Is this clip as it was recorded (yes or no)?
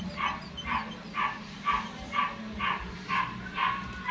yes